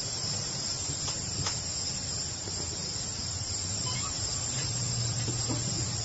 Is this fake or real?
fake